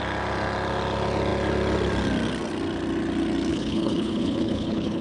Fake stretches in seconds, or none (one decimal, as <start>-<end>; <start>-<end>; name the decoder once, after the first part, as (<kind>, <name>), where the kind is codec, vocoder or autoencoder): 3.5-5.0 (codec, HILCodec)